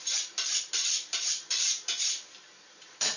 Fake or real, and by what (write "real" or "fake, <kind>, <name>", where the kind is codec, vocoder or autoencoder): fake, vocoder, BigVGAN v2